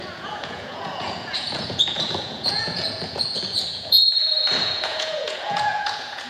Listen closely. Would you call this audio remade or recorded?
remade